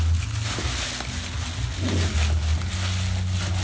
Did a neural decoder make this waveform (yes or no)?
no